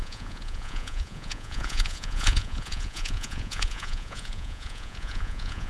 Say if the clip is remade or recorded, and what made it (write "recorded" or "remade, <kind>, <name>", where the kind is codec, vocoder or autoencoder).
remade, vocoder, Vocos